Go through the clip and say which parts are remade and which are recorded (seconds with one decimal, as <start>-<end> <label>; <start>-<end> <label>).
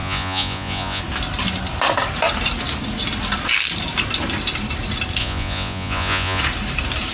0.0-1.0 remade; 1.0-5.2 recorded; 5.2-6.4 remade; 6.4-7.1 recorded